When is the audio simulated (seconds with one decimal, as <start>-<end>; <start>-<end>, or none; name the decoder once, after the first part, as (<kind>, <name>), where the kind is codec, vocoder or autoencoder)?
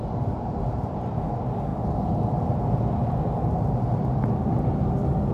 none